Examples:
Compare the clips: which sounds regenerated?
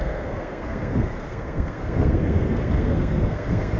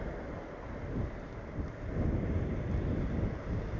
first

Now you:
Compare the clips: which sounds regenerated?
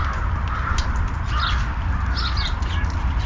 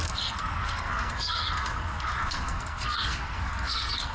second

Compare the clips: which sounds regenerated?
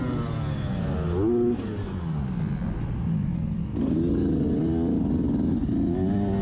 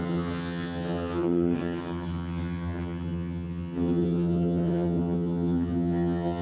second